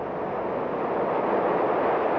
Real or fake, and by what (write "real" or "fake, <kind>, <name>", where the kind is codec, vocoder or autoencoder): real